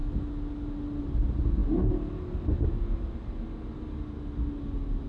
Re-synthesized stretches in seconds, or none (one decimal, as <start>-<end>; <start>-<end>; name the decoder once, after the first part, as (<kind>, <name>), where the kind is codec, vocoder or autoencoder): none